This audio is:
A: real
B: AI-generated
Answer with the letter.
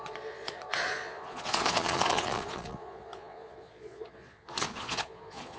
B